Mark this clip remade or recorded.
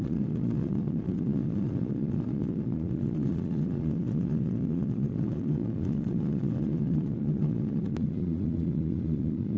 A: remade